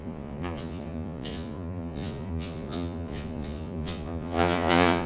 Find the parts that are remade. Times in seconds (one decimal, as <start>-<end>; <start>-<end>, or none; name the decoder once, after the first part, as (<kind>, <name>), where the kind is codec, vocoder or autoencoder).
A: 0.0-5.1 (vocoder, Vocos)